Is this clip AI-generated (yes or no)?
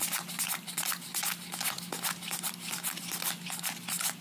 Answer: no